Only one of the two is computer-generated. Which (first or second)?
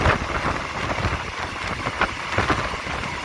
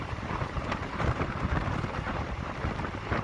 second